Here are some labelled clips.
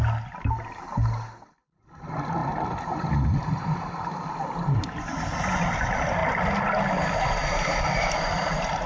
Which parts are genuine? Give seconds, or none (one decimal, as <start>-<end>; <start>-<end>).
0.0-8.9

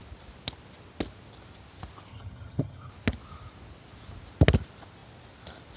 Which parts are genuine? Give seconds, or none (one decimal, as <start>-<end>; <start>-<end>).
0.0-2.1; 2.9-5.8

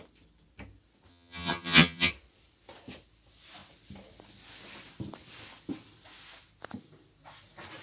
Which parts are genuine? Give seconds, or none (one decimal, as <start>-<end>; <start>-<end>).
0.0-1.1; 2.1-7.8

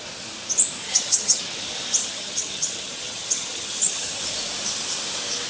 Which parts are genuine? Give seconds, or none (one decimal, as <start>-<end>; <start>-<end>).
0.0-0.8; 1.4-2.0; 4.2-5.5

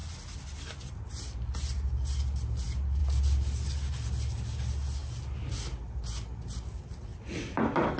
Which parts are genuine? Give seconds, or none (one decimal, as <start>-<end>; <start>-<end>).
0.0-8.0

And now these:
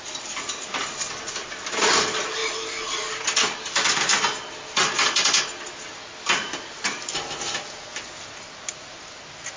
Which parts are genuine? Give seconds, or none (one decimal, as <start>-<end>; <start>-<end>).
0.0-9.6

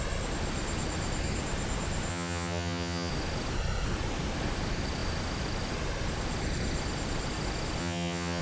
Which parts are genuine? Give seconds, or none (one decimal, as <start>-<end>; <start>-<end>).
0.0-2.1; 3.1-7.8